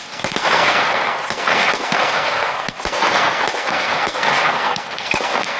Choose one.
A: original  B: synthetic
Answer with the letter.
B